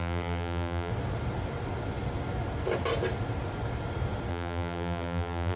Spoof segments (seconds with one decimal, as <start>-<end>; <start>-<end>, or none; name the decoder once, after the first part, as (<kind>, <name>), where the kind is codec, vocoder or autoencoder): 0.0-0.9 (vocoder, BigVGAN v2); 4.3-5.6